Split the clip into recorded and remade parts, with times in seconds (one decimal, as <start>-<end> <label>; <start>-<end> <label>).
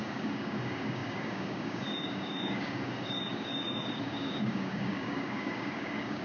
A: 0.0-6.2 remade